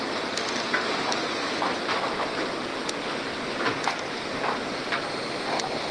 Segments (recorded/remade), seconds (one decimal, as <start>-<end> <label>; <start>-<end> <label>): 0.0-5.9 recorded